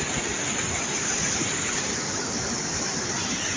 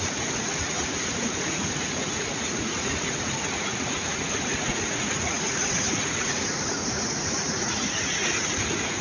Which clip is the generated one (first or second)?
second